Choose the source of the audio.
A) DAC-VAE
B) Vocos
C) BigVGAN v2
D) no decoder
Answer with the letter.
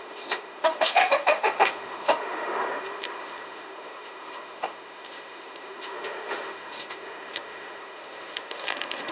A